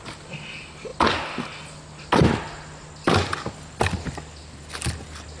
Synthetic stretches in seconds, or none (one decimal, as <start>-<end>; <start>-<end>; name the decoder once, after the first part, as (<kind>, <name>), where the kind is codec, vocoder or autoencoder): none